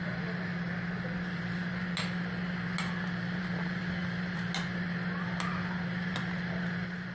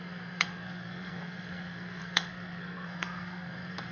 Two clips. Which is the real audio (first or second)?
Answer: first